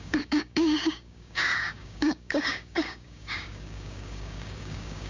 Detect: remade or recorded remade